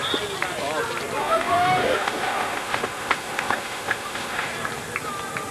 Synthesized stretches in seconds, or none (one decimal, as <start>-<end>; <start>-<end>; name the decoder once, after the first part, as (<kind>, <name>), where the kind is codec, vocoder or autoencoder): 1.2-4.5 (autoencoder, DAC-VAE)